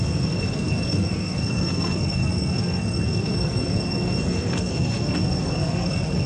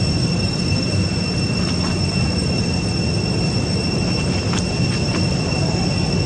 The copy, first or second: first